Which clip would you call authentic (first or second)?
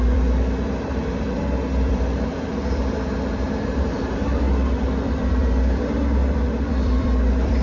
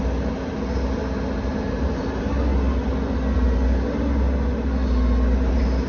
second